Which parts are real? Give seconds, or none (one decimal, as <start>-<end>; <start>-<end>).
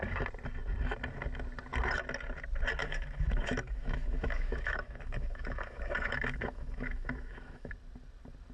0.0-2.8; 7.7-8.5